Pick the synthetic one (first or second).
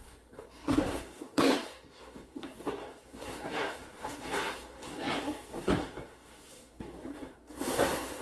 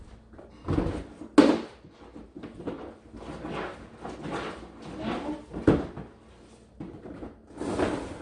first